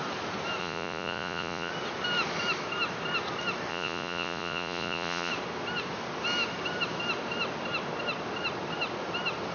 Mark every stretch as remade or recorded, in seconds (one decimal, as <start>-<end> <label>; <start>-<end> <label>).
0.0-0.6 recorded; 0.6-1.7 remade; 1.7-3.7 recorded; 3.7-5.3 remade; 5.3-9.5 recorded